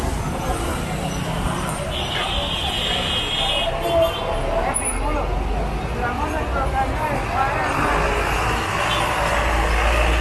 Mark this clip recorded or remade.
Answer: recorded